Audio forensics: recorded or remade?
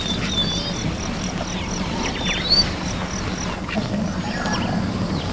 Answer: recorded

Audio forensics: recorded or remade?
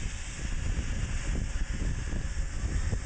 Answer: recorded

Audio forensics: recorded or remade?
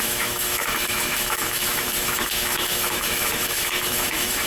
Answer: remade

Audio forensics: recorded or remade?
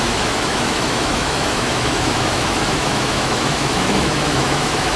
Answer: remade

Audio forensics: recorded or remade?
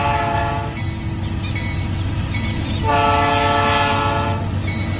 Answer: recorded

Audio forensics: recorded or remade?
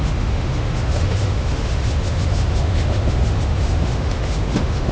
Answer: remade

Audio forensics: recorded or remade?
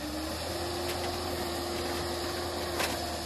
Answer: recorded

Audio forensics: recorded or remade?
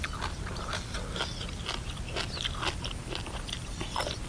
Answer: recorded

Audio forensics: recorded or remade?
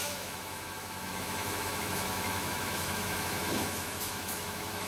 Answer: remade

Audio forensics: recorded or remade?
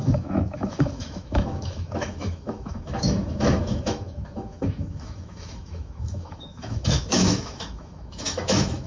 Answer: remade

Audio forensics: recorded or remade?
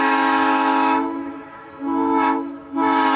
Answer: remade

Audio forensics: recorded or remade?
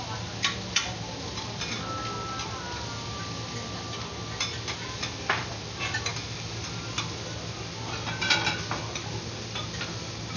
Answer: recorded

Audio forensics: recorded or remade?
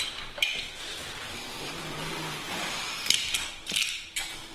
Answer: recorded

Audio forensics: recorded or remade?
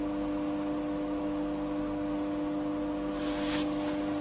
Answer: recorded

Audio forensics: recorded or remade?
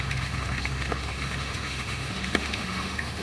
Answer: remade